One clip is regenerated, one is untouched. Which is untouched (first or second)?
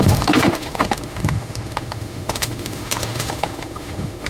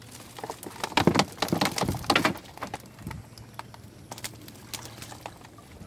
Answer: second